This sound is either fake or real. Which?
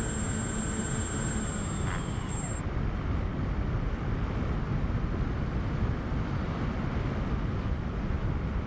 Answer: real